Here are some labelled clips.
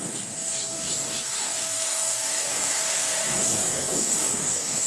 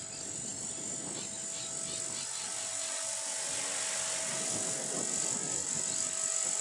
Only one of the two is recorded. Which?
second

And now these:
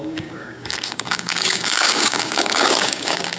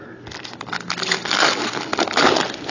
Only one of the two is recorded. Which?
second